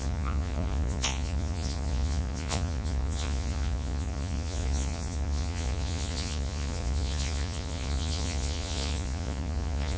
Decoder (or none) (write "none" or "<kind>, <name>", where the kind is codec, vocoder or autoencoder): vocoder, Vocos